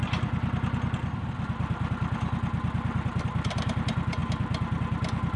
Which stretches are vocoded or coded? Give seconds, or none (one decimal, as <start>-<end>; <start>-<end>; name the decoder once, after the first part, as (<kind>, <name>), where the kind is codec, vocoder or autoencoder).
none